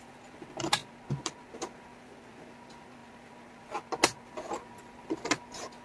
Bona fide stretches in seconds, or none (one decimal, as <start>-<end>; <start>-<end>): 0.0-5.8